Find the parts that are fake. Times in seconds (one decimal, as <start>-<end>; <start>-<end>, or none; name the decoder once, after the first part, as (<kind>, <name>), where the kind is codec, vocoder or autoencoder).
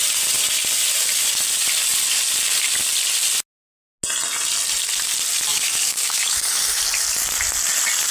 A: 5.5-6.8 (codec, DAC)